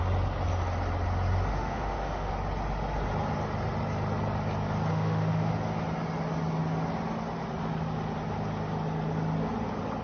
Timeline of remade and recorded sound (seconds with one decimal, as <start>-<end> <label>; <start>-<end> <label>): 0.0-1.5 recorded; 1.5-2.3 remade; 2.3-4.9 recorded; 4.9-5.5 remade; 5.5-10.0 recorded